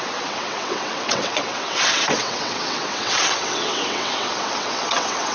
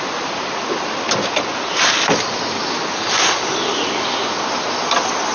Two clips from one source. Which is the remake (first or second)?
first